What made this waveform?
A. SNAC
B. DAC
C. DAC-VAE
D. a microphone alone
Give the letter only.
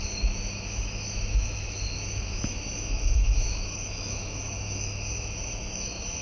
C